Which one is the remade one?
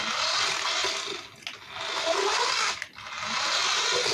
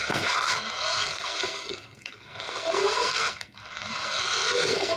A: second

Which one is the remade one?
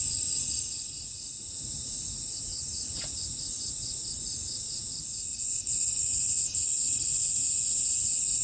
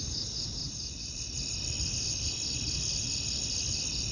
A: first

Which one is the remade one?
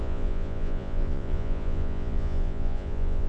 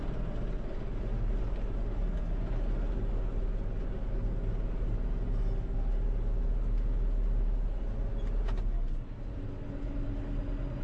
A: first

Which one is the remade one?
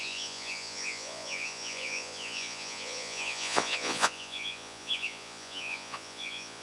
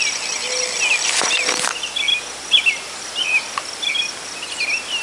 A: first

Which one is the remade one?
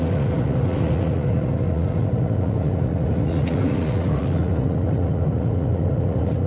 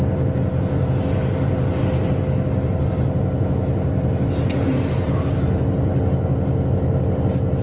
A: first